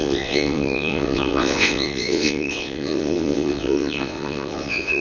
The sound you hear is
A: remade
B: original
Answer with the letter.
A